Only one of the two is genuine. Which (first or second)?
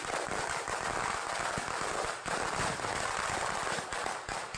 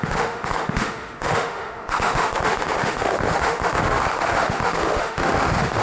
first